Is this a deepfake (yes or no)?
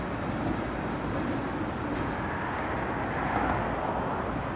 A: no